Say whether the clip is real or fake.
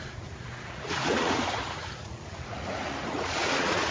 fake